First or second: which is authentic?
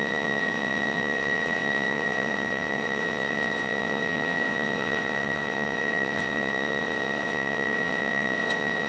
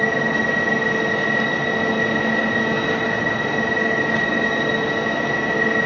second